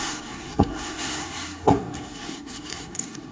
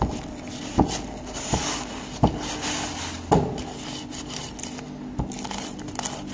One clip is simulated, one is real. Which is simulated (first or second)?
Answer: first